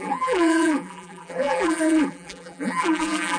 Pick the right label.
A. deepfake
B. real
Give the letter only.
A